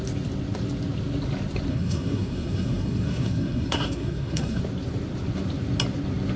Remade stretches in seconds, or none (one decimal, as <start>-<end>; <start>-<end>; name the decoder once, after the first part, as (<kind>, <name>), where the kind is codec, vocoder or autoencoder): 1.7-4.6 (codec, SNAC)